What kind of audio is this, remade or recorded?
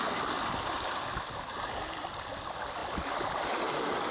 recorded